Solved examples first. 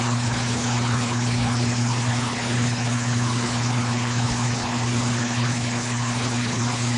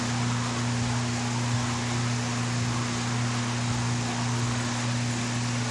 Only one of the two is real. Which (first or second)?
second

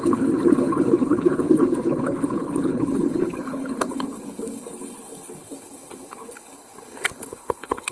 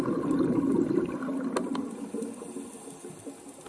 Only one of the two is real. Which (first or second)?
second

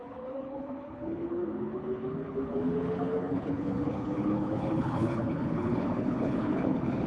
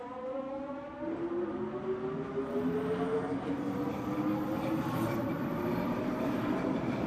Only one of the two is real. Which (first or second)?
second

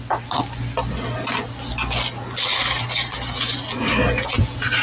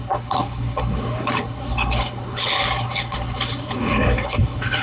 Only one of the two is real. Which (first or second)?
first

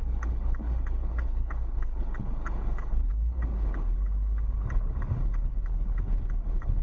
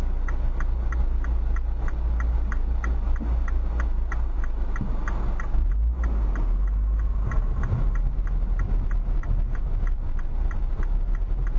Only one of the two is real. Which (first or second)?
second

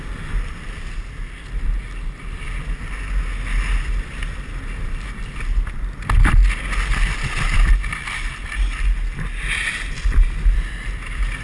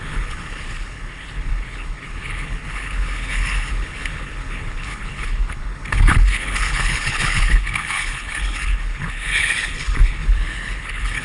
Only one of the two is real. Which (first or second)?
first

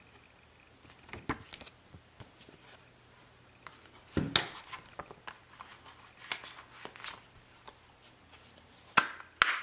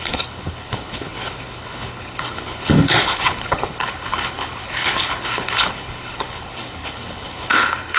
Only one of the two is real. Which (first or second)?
first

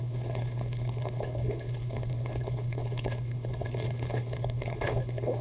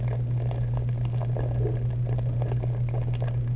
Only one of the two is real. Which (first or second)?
second